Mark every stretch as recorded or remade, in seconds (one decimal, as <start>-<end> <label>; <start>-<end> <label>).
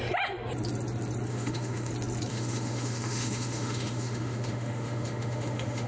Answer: 0.0-1.3 recorded; 1.3-1.9 remade; 1.9-2.3 recorded; 2.3-5.9 remade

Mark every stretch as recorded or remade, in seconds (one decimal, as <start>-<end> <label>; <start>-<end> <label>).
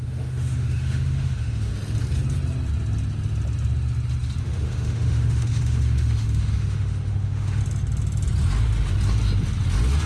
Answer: 0.0-1.7 remade; 1.7-4.4 recorded; 4.4-7.6 remade; 7.6-10.1 recorded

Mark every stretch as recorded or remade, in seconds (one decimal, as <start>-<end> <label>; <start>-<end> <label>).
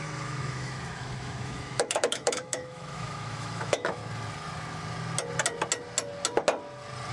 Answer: 0.0-4.0 remade; 4.0-7.1 recorded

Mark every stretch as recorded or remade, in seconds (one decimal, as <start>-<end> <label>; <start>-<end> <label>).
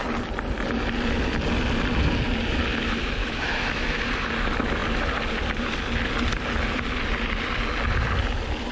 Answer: 0.0-3.2 recorded; 3.2-4.0 remade; 4.0-8.7 recorded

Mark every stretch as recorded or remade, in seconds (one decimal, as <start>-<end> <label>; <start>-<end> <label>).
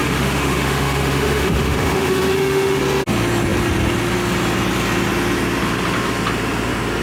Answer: 0.0-2.8 remade; 2.8-7.0 recorded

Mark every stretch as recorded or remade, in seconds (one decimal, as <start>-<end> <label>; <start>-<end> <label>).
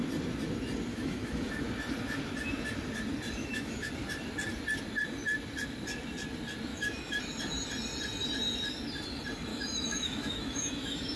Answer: 0.0-0.9 recorded; 0.9-1.5 remade; 1.5-3.4 recorded; 3.4-3.9 remade; 3.9-6.7 recorded; 6.7-7.2 remade; 7.2-9.5 recorded; 9.5-11.2 remade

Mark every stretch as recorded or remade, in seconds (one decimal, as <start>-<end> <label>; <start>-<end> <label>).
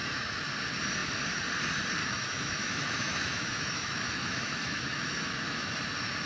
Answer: 0.0-0.5 remade; 0.5-2.0 recorded; 2.0-5.8 remade; 5.8-6.3 recorded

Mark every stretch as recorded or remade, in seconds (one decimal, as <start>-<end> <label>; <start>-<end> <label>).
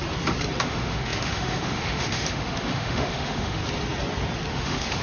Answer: 0.0-0.6 recorded; 0.6-3.6 remade; 3.6-4.5 recorded; 4.5-5.0 remade